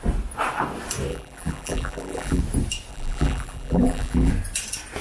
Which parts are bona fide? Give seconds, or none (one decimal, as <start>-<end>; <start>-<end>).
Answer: 0.0-1.1; 2.4-2.9; 4.3-5.0